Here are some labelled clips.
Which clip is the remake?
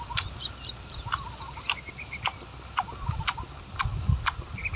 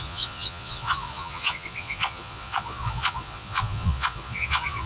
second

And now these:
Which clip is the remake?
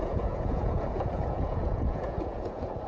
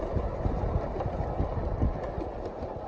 first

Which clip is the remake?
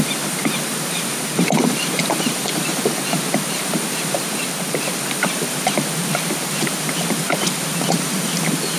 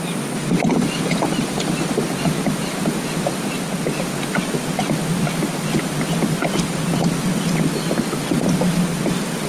first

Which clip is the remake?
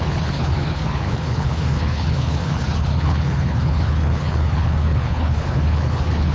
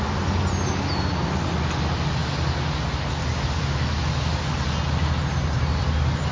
first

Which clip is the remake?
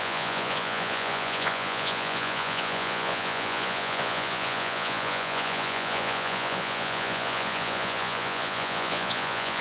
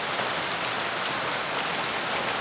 first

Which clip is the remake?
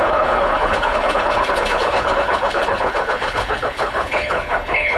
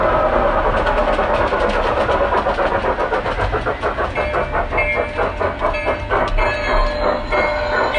first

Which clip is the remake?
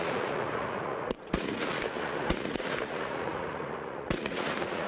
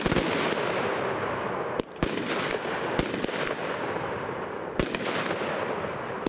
first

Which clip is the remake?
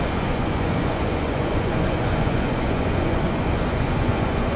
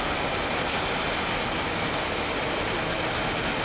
first